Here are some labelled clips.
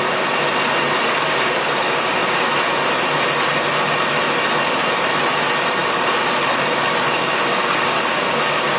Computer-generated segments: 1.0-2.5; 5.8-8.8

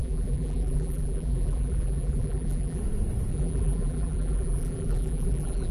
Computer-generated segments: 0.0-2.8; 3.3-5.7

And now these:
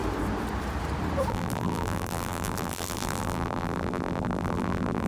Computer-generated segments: 1.3-5.1